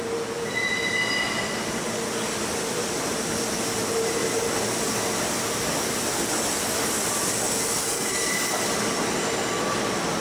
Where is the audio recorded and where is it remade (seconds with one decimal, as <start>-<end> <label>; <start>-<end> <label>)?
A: 0.0-7.8 recorded; 7.8-8.3 remade; 8.3-10.2 recorded